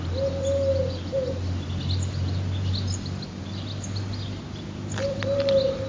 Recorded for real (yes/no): yes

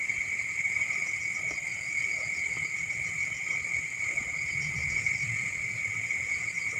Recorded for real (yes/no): yes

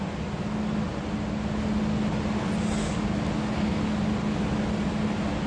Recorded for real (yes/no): yes